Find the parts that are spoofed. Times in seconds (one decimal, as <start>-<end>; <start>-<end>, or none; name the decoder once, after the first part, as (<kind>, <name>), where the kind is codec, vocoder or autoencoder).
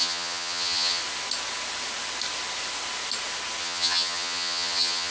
0.0-1.0 (vocoder, HiFi-GAN); 3.6-5.1